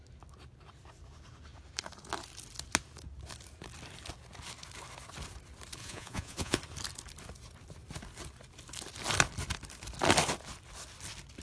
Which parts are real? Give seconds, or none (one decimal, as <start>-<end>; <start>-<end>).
0.0-5.8; 6.6-11.4